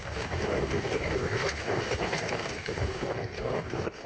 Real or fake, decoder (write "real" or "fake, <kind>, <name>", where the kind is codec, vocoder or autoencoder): fake, codec, DAC